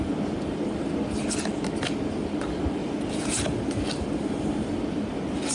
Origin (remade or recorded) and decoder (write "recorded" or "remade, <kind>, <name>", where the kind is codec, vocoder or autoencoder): recorded